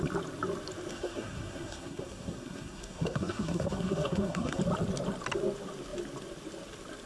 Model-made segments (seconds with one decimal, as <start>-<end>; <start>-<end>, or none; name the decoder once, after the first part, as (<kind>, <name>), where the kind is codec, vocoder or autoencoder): 0.9-4.6 (codec, SNAC)